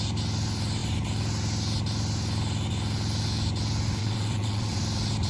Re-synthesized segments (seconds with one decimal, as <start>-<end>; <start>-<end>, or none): 4.0-4.8